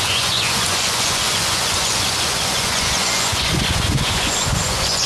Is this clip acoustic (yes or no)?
no